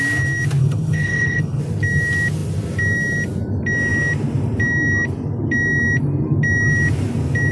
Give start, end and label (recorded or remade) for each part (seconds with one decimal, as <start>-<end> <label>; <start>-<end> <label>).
0.0-0.6 recorded; 0.6-1.6 remade; 1.6-7.5 recorded